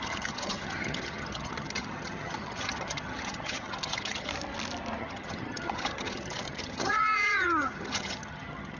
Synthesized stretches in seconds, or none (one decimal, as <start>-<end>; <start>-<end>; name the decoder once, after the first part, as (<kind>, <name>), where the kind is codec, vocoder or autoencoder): 0.0-4.3 (vocoder, HiFi-GAN); 5.0-8.8